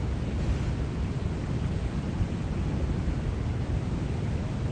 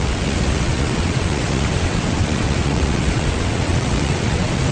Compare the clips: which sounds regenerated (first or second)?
second